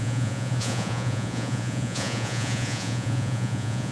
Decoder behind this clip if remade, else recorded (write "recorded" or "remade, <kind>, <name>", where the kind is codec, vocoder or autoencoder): remade, vocoder, Vocos